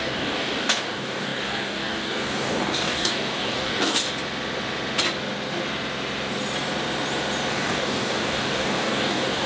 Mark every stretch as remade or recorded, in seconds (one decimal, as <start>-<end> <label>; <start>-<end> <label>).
0.0-4.0 remade; 4.0-7.5 recorded; 7.5-9.5 remade